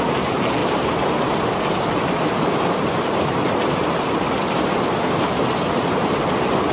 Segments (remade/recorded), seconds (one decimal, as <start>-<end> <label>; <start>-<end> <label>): 0.0-0.6 recorded; 0.6-3.4 remade; 3.4-4.4 recorded; 4.4-6.3 remade; 6.3-6.7 recorded